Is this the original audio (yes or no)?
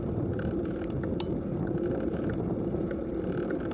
yes